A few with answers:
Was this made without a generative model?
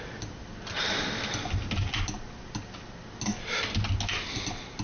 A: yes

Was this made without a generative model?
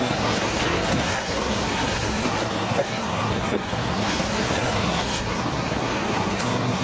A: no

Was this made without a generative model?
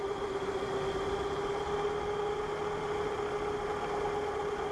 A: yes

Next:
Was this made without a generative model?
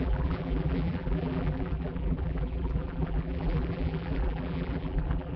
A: no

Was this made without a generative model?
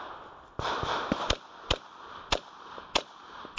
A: yes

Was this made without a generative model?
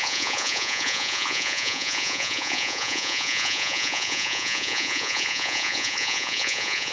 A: no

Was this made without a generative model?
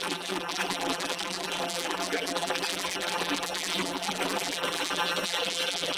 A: no